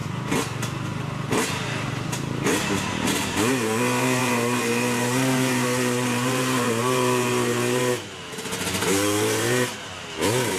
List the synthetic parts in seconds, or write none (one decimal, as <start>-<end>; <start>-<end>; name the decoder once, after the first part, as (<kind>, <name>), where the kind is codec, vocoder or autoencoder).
0.0-10.6 (vocoder, BigVGAN v2)